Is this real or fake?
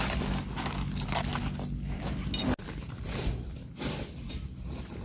real